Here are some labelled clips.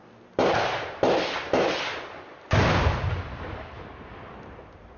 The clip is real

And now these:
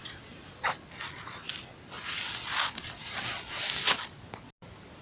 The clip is real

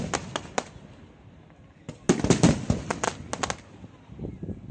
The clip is real